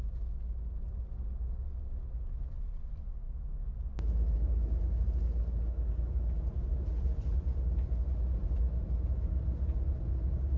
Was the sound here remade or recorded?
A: recorded